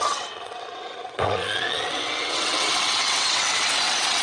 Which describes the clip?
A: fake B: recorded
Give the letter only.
A